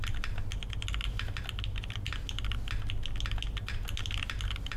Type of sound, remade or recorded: recorded